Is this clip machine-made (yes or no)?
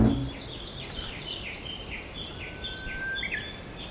no